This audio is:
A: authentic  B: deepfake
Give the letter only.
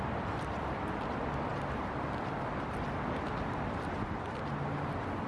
A